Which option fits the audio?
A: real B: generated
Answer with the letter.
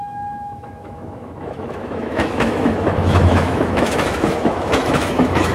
B